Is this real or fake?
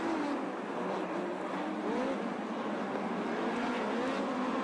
real